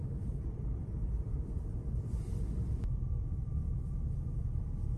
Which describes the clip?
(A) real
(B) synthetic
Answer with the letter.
B